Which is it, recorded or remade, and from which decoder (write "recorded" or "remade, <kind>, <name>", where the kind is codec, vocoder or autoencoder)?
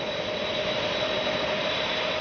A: remade, vocoder, BigVGAN v2